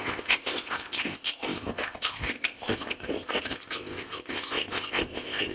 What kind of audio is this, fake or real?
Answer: fake